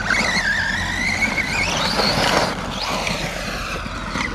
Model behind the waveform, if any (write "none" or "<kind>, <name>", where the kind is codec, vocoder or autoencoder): none